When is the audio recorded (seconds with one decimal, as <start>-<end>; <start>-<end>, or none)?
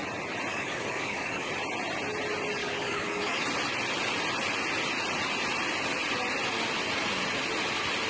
0.0-0.5; 1.5-2.6; 3.4-8.1